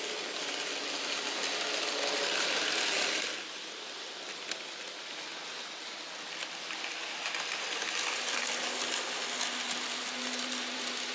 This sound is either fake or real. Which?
real